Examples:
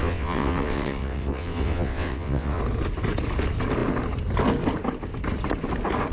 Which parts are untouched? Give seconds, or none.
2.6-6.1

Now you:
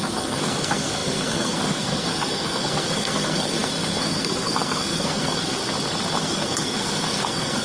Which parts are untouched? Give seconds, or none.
5.6-6.2

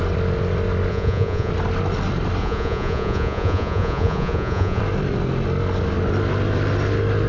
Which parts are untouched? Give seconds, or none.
0.0-0.9; 1.5-2.4; 4.8-7.3